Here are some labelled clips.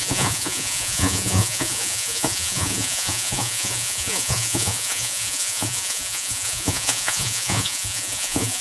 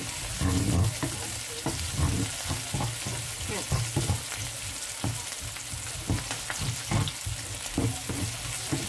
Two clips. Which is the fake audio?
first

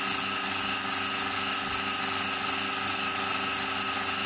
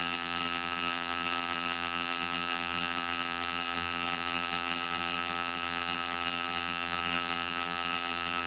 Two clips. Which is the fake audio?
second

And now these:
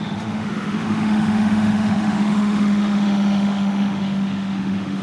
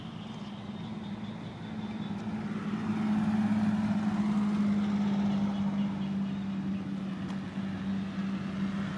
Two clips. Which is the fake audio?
first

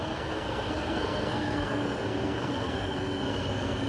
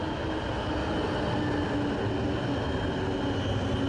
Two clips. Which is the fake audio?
first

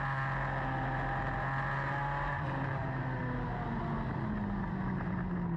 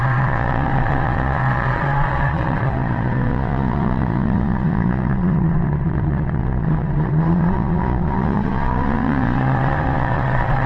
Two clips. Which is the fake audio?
second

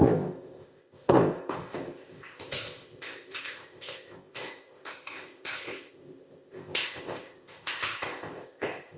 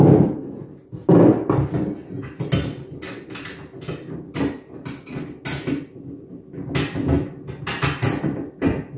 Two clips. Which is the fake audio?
first